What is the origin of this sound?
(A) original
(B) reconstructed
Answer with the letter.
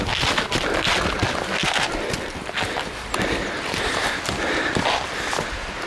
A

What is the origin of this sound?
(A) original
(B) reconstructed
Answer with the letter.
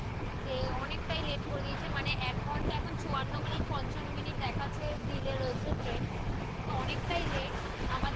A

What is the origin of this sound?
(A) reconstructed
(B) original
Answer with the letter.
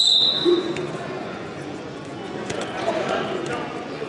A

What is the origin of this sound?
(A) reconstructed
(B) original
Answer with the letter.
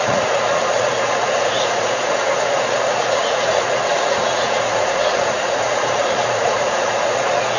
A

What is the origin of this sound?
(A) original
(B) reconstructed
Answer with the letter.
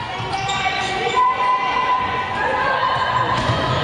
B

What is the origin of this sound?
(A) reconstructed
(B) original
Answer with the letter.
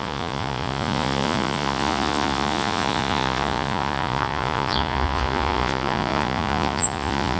A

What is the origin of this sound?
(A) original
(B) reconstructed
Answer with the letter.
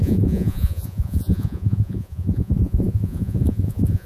B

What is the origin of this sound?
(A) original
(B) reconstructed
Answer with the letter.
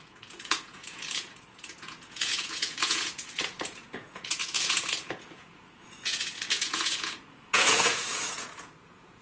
B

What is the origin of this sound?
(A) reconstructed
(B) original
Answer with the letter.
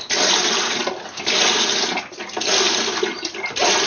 B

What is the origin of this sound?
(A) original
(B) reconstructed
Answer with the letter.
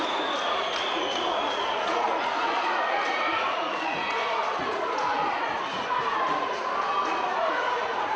B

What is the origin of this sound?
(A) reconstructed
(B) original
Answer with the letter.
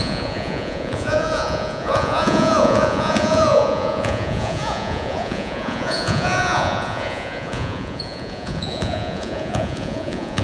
A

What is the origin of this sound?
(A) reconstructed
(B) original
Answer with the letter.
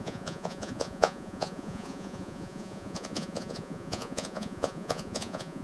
A